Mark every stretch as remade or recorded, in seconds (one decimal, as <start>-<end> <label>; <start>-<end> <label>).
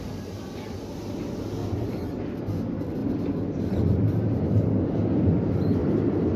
0.0-6.4 recorded